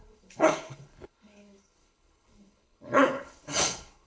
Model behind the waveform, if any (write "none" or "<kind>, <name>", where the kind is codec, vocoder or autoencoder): codec, HILCodec